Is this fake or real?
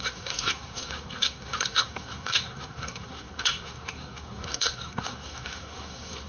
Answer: fake